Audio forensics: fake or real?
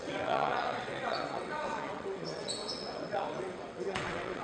fake